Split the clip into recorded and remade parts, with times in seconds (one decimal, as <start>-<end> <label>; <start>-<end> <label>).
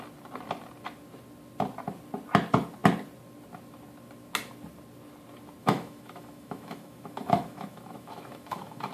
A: 0.0-5.6 recorded; 5.6-8.9 remade